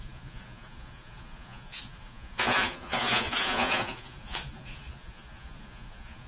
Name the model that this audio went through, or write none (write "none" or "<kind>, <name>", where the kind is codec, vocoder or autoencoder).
vocoder, Vocos